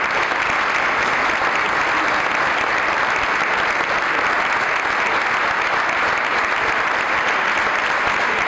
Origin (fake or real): real